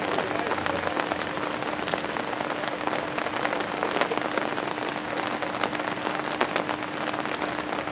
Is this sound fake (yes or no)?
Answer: no